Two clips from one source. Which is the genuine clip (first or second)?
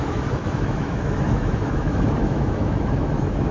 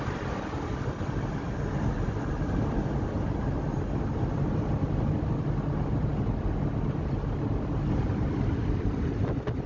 second